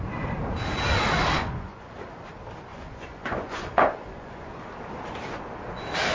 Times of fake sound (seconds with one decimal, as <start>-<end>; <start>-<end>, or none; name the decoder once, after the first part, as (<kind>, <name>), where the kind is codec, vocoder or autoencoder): 1.4-1.9 (vocoder, Vocos); 2.7-4.7